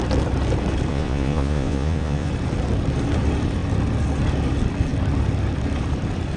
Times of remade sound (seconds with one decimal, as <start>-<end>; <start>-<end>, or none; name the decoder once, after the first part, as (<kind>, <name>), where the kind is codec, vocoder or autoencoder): 0.9-2.3 (vocoder, Vocos)